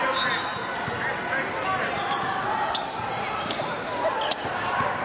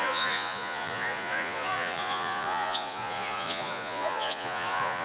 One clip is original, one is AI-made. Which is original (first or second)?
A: first